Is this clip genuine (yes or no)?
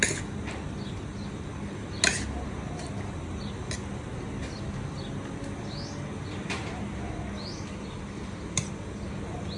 yes